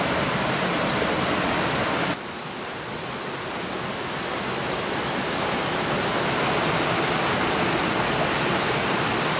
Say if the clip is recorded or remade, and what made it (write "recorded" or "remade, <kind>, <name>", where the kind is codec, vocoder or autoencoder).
recorded